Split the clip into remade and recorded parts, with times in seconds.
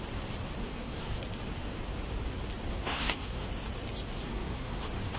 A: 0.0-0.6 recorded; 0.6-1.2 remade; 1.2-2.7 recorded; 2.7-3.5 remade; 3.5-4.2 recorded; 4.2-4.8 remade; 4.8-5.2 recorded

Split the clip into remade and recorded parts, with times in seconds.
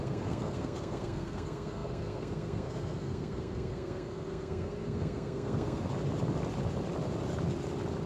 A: 0.0-5.9 remade; 5.9-8.1 recorded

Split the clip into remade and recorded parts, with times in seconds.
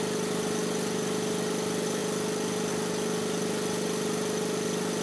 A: 0.0-5.0 recorded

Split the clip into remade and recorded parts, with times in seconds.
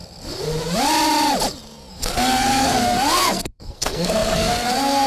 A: 0.0-1.9 recorded; 1.9-5.1 remade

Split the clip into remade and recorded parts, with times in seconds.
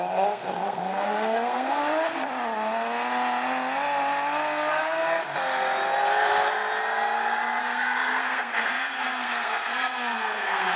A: 0.0-1.8 remade; 1.8-4.7 recorded; 4.7-5.2 remade; 5.2-7.6 recorded; 7.6-10.8 remade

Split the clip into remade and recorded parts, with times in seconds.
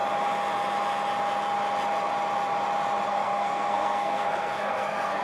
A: 0.0-3.1 recorded; 3.1-5.2 remade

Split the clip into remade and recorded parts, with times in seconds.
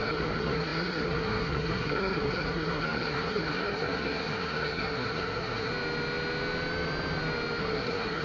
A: 0.0-5.7 remade; 5.7-7.6 recorded; 7.6-8.2 remade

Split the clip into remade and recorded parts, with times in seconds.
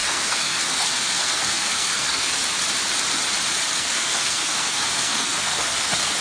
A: 0.0-2.4 remade; 2.4-3.7 recorded; 3.7-6.2 remade